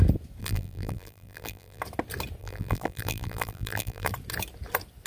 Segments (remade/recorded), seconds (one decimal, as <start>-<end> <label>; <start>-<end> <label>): 0.0-0.4 recorded; 0.4-1.8 remade; 1.8-2.4 recorded; 2.4-4.1 remade; 4.1-5.1 recorded